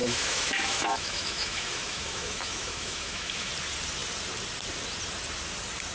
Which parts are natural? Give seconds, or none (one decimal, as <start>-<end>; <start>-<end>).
3.5-5.9

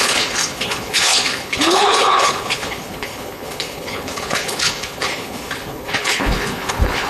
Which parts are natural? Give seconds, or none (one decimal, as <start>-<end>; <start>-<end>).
none